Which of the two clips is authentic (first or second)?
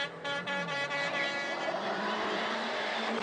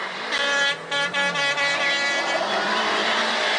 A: second